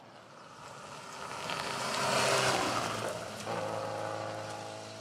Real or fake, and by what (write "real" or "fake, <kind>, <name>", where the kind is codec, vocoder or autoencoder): real